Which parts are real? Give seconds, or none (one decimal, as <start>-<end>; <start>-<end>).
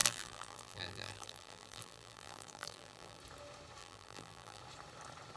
3.2-3.8; 4.6-5.4